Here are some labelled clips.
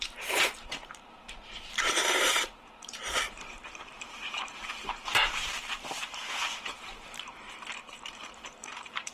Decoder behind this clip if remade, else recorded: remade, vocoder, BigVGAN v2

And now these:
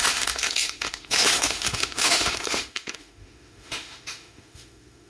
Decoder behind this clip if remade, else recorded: remade, autoencoder, DAC-VAE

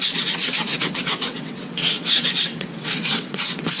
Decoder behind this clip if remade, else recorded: remade, vocoder, WaveNeXt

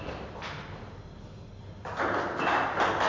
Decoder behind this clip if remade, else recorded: recorded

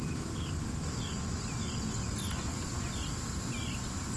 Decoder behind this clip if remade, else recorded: recorded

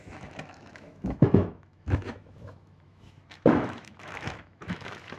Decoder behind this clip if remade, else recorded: remade, autoencoder, DAC-VAE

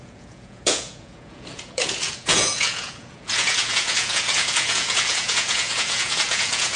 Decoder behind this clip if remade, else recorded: remade, vocoder, Vocos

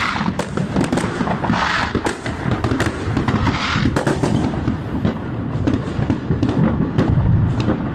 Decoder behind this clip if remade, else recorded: recorded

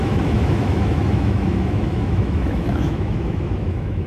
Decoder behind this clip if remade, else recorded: remade, autoencoder, DAC-VAE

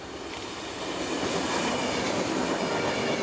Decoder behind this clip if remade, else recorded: recorded